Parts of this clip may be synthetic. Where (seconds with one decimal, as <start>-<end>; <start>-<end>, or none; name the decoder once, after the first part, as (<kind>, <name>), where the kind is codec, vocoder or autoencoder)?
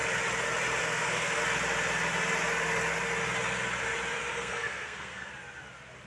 0.8-1.4 (codec, SNAC); 4.3-5.3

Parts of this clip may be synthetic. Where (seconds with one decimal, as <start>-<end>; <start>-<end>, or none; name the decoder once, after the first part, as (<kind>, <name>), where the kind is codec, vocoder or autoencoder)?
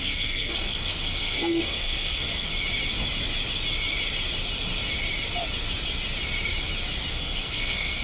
0.0-2.5 (codec, SNAC); 7.1-8.0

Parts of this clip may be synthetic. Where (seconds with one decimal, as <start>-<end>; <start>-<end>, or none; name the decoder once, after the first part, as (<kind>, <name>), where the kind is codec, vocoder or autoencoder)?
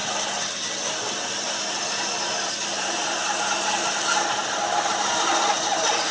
none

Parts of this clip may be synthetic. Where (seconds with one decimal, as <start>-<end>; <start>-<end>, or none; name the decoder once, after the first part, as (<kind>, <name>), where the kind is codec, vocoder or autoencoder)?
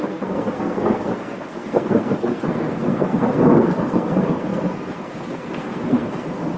0.0-6.6 (codec, SNAC)